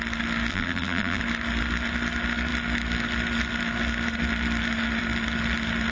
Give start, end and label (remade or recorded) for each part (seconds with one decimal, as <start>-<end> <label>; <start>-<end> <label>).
0.0-0.5 recorded; 0.5-1.2 remade; 1.2-5.9 recorded